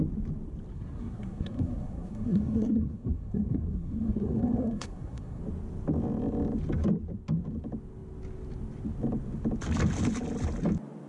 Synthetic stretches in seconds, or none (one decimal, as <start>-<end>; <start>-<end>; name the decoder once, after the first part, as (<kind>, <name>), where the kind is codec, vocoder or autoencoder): 0.7-5.4 (codec, SNAC)